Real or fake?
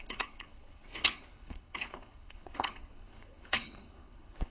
fake